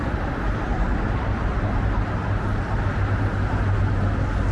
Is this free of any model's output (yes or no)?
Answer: yes